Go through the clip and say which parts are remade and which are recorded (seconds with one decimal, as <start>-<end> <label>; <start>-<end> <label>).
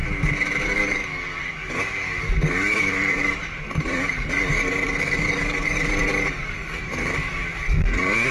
0.0-0.6 recorded; 0.6-8.3 remade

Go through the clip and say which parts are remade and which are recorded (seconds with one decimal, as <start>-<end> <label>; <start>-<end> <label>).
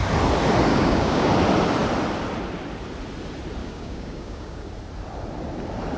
0.0-0.7 recorded; 0.7-1.3 remade; 1.3-3.6 recorded; 3.6-4.7 remade; 4.7-6.0 recorded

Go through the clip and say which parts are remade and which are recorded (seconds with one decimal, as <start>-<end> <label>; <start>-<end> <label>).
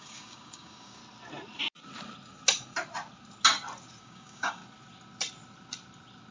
0.0-1.0 remade; 1.0-4.0 recorded; 4.0-4.6 remade; 4.6-6.3 recorded